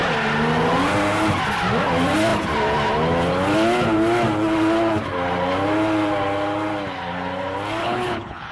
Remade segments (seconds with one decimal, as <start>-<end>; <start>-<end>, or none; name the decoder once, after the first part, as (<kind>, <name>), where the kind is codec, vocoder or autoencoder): 7.8-8.5 (codec, HILCodec)